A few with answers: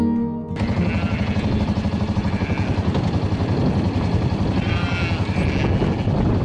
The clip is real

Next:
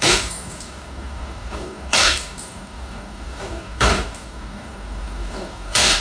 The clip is fake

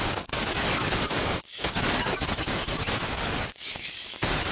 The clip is fake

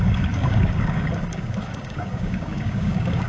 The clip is fake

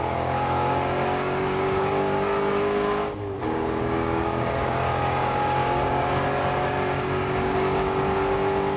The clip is fake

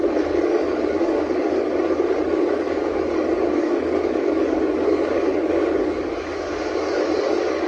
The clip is fake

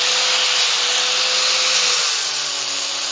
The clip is real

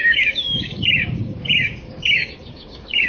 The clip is fake